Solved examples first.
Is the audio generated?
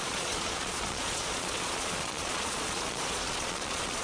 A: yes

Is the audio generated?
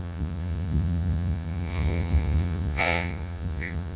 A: yes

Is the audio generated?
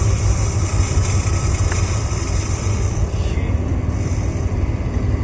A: yes